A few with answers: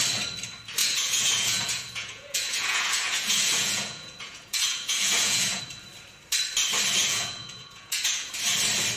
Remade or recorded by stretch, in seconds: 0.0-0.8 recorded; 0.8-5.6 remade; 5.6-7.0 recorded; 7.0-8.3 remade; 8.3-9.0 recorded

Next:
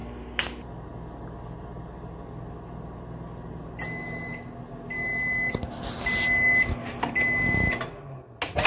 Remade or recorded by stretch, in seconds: 0.0-8.7 recorded